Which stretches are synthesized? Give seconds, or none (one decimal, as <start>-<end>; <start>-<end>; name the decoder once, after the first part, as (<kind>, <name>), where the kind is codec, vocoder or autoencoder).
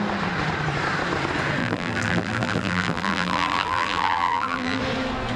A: 1.6-4.8 (vocoder, BigVGAN v2)